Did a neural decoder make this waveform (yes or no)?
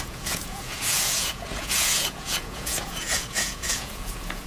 yes